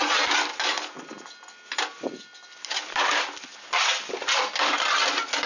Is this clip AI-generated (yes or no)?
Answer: no